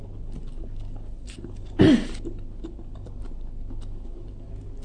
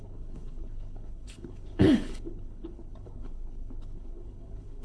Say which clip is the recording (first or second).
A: first